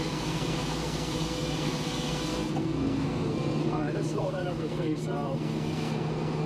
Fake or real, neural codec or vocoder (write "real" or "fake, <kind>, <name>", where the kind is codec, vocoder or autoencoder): fake, codec, SNAC